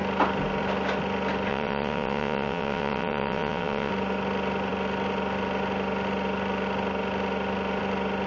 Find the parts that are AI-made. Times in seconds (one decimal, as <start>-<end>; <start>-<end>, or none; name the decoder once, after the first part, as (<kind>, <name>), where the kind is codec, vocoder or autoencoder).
1.5-3.9 (vocoder, WaveNeXt)